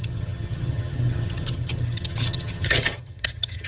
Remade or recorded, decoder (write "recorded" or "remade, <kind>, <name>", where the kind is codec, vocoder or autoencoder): remade, vocoder, HiFi-GAN